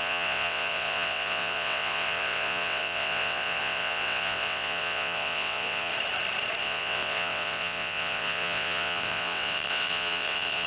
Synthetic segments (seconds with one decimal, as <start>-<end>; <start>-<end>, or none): 0.0-5.9; 6.6-10.7